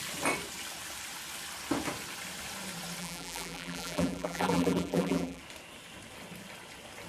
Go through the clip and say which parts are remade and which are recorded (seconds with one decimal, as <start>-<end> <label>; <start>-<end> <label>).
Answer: 0.0-3.0 recorded; 3.0-5.4 remade; 5.4-7.1 recorded